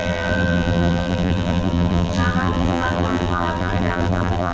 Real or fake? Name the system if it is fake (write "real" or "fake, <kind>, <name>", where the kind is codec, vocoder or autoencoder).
fake, vocoder, BigVGAN v2